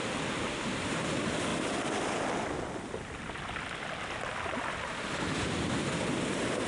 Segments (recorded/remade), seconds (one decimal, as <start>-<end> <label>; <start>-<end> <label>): 0.0-6.7 recorded